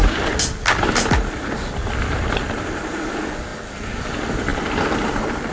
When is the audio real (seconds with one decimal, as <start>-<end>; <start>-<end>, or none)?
0.0-5.5